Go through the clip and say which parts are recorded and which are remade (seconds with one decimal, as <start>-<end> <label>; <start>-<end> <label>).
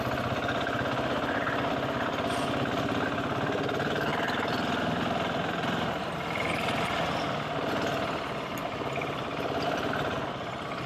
0.0-8.6 recorded; 8.6-9.9 remade; 9.9-10.9 recorded